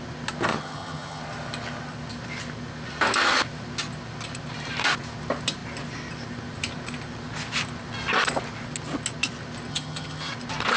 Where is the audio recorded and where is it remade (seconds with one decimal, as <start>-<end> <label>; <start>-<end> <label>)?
0.0-0.5 recorded; 0.5-1.2 remade; 1.2-9.7 recorded; 9.7-10.3 remade; 10.3-10.8 recorded